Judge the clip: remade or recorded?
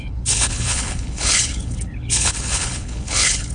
remade